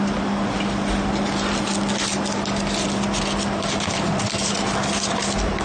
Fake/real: real